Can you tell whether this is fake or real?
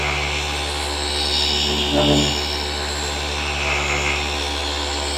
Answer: real